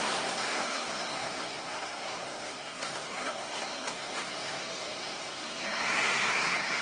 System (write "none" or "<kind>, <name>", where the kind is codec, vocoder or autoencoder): codec, SNAC